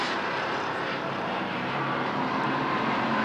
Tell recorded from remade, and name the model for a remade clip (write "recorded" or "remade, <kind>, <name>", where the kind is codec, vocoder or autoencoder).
remade, vocoder, BigVGAN v2